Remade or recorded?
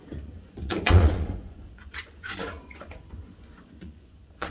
remade